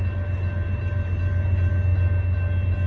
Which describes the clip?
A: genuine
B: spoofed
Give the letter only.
A